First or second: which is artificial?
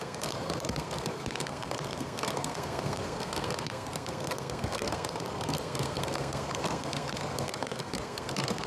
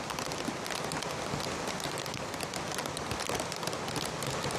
first